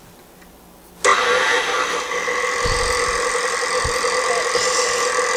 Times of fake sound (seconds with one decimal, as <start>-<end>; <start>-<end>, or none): 1.1-1.9